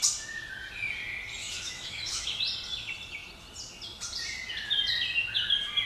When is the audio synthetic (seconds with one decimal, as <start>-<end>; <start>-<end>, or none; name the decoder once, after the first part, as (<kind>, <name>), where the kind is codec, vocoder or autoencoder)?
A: 1.4-2.4 (autoencoder, DAC-VAE)